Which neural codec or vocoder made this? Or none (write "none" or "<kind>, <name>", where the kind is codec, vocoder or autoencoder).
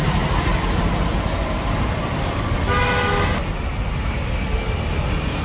none